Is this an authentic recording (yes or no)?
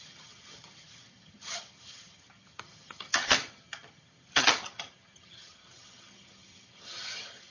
no